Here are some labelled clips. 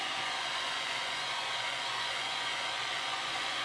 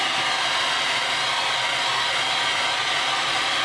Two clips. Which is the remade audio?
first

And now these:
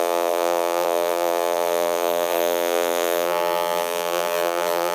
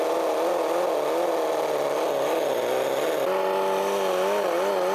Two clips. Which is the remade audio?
first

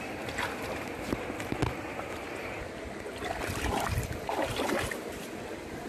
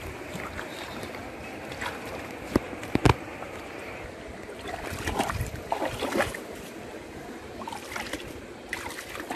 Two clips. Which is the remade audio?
second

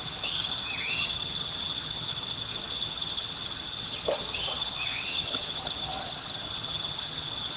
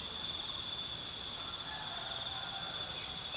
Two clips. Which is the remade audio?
first